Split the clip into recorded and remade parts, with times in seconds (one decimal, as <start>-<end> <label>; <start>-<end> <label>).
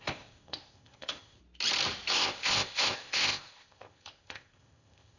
0.0-1.4 remade; 1.4-2.1 recorded; 2.1-5.2 remade